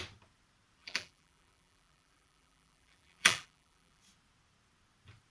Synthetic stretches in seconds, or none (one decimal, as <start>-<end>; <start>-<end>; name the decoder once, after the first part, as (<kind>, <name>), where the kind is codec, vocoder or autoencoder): 0.8-4.0 (vocoder, BigVGAN v2)